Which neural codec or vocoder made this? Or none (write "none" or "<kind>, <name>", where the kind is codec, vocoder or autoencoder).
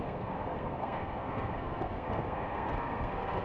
codec, SNAC